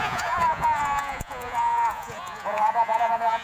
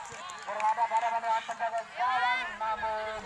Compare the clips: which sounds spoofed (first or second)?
first